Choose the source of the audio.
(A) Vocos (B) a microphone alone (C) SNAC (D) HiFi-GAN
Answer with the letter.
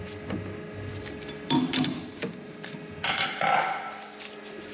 B